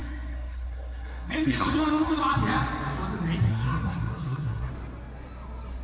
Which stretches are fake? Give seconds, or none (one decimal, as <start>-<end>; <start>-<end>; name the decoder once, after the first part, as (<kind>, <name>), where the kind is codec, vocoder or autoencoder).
0.0-2.2 (codec, SNAC); 3.5-4.7